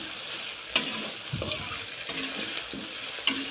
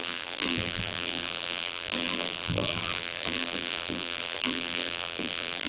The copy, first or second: second